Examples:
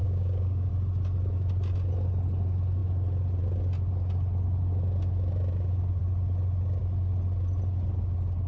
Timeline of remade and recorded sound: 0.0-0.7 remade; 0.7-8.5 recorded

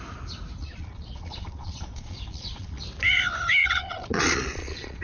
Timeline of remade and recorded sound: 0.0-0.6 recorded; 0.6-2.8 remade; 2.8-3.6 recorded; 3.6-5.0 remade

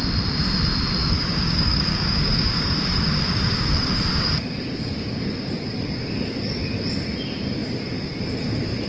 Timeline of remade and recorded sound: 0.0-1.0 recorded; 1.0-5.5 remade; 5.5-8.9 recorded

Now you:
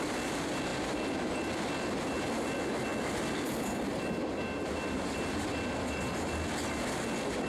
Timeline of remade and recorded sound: 0.0-7.5 recorded

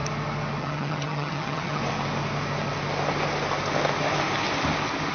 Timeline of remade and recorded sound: 0.0-0.6 recorded; 0.6-1.8 remade; 1.8-5.1 recorded